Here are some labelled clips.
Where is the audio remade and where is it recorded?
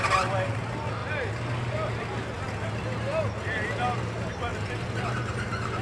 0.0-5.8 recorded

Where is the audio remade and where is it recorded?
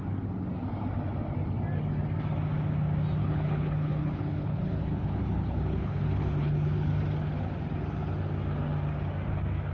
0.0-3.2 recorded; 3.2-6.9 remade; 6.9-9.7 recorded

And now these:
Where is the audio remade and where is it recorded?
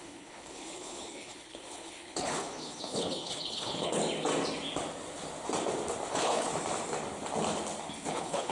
0.0-4.0 remade; 4.0-6.1 recorded; 6.1-6.5 remade; 6.5-8.1 recorded; 8.1-8.5 remade